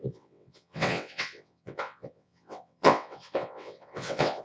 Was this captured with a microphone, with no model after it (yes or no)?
no